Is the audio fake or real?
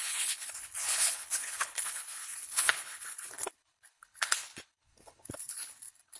fake